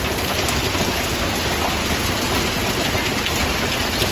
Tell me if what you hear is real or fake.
real